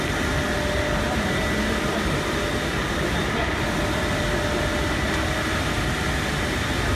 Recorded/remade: recorded